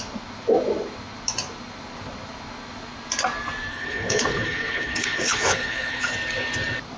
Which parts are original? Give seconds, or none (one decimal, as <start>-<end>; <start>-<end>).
0.0-3.7; 6.1-7.0